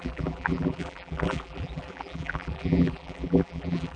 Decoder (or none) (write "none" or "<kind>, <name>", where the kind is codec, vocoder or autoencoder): vocoder, BigVGAN v2